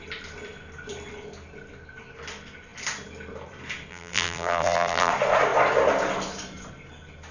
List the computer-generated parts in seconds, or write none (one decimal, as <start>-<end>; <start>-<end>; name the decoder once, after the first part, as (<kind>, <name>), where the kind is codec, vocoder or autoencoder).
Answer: 3.9-5.1 (vocoder, BigVGAN v2)